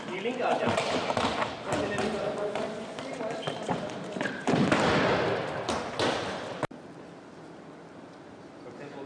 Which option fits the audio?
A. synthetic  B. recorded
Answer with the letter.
B